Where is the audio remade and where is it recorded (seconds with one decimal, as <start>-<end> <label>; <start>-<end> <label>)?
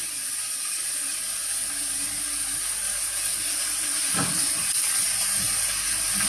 0.0-6.3 recorded